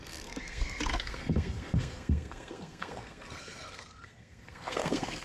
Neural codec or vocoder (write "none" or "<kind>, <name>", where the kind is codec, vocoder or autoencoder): codec, SNAC